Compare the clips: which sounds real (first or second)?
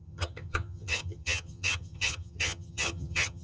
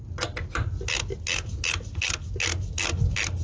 second